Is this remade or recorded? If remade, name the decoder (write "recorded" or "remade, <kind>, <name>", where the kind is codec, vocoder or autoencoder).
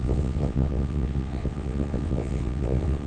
remade, vocoder, WaveNeXt